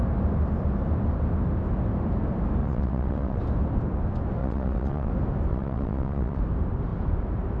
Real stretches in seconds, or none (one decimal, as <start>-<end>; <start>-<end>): 0.0-2.6; 3.4-4.4; 5.1-5.5; 6.4-7.6